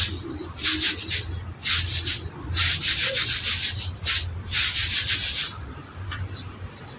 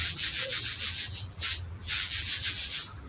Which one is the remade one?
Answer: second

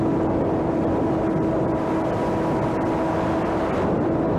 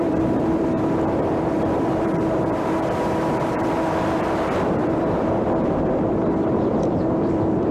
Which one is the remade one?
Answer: second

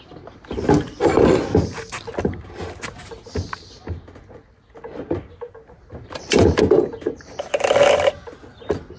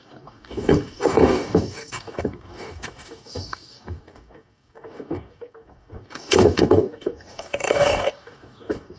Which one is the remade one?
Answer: second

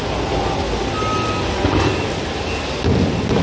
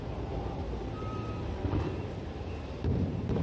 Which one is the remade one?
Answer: second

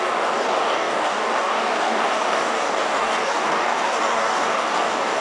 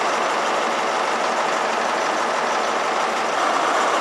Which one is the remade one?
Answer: first